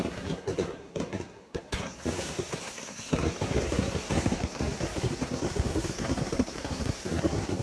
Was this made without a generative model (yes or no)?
no